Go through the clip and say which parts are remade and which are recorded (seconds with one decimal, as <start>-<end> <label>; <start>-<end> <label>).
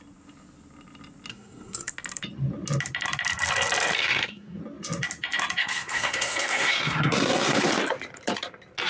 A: 0.0-1.3 recorded; 1.3-1.9 remade; 1.9-4.0 recorded; 4.0-4.6 remade; 4.6-5.6 recorded; 5.6-7.7 remade; 7.7-8.9 recorded